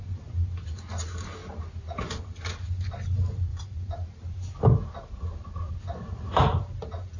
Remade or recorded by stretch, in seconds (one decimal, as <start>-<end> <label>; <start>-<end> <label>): 0.0-7.2 recorded

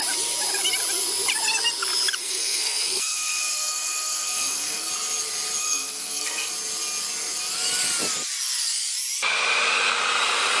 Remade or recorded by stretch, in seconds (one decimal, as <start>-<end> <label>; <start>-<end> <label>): 0.0-2.2 recorded; 2.2-4.9 remade; 4.9-5.6 recorded; 5.6-6.5 remade; 6.5-10.6 recorded

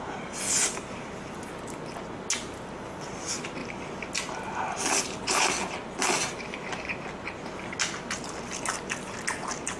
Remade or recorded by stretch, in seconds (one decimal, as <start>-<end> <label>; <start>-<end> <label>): 0.0-9.8 recorded

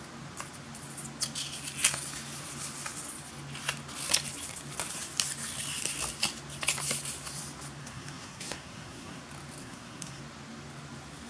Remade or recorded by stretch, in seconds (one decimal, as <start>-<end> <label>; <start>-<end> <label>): 0.0-7.8 recorded; 7.8-9.2 remade; 9.2-9.6 recorded; 9.6-10.2 remade; 10.2-11.3 recorded

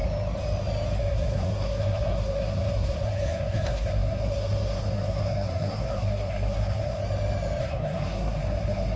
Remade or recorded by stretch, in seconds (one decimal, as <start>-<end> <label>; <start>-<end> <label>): 0.0-1.0 recorded; 1.0-7.0 remade; 7.0-7.6 recorded; 7.6-9.0 remade